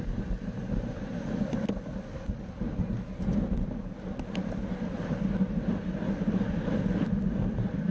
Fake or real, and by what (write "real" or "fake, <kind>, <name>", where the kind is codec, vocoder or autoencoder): real